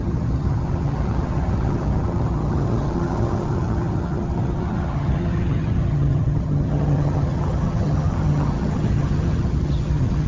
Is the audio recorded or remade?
remade